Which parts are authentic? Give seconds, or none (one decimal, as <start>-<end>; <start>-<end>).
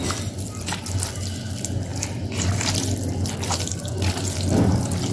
0.0-5.1